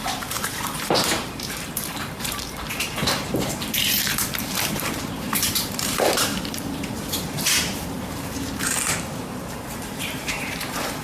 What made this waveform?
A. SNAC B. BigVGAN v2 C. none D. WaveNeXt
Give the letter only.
B